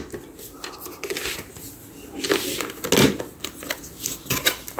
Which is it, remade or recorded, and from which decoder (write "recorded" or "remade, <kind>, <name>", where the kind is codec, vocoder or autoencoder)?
recorded